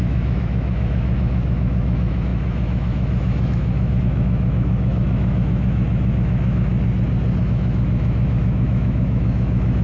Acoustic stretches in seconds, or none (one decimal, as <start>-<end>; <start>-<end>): 6.7-7.4